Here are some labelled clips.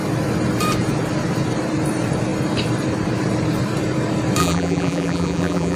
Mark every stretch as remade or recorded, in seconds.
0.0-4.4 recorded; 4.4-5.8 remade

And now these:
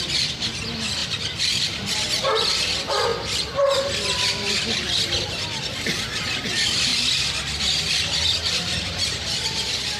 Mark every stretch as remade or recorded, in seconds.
0.0-1.0 recorded; 1.0-1.9 remade; 1.9-10.0 recorded

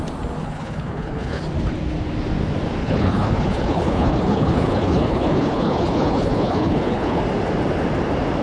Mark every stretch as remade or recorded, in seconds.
0.0-0.4 recorded; 0.4-1.4 remade; 1.4-2.8 recorded; 2.8-7.2 remade; 7.2-8.4 recorded

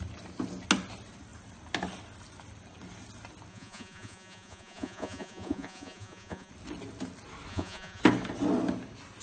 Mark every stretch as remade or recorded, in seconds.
0.0-3.5 recorded; 3.5-6.5 remade; 6.5-7.5 recorded; 7.5-8.0 remade; 8.0-9.2 recorded

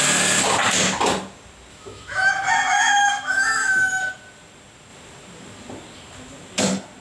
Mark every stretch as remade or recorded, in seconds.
0.0-1.7 recorded; 1.7-2.3 remade; 2.3-2.7 recorded; 2.7-4.0 remade; 4.0-7.0 recorded

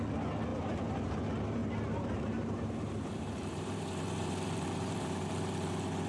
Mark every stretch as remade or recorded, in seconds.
0.0-0.5 recorded; 0.5-1.2 remade; 1.2-1.6 recorded; 1.6-5.3 remade; 5.3-6.1 recorded

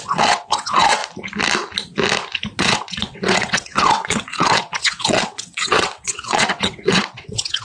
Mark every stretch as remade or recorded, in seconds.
0.0-1.0 remade; 1.0-2.6 recorded; 2.6-7.6 remade

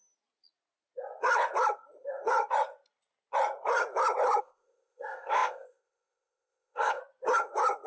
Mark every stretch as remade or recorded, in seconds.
0.0-4.4 recorded; 4.4-7.0 remade; 7.0-7.9 recorded